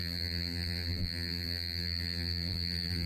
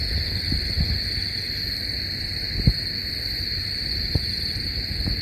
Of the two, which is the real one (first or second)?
second